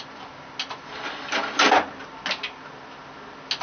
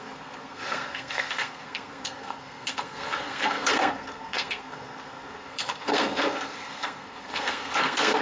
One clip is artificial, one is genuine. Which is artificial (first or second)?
second